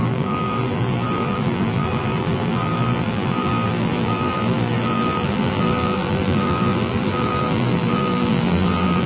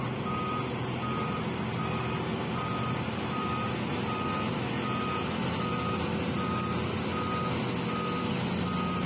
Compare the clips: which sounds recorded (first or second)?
second